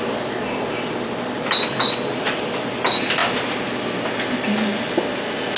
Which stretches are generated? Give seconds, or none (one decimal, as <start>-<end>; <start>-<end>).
none